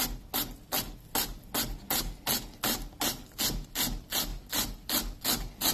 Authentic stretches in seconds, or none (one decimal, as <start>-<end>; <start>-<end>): 0.0-5.7